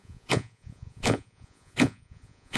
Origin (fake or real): fake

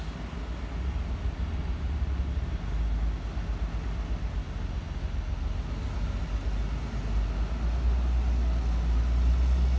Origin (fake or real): real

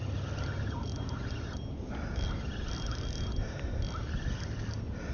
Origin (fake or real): real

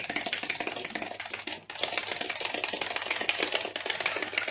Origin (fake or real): real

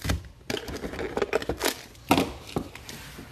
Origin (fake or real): real